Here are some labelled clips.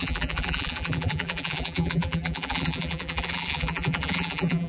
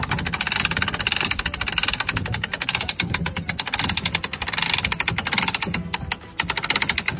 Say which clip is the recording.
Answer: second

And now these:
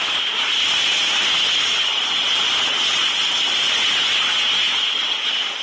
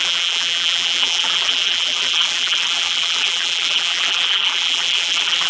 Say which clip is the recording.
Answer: first